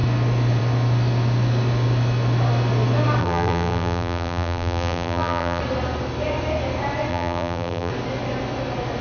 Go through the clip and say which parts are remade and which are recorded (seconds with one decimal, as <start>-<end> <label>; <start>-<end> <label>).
0.0-3.2 recorded; 3.2-5.6 remade; 5.6-7.1 recorded; 7.1-7.9 remade; 7.9-9.0 recorded